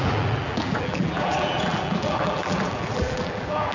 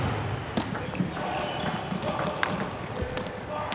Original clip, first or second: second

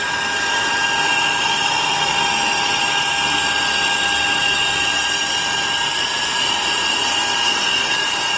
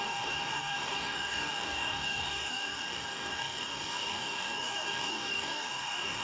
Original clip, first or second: first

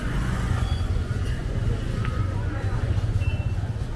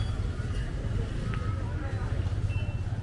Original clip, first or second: second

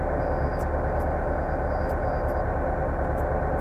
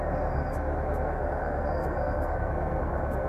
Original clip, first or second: first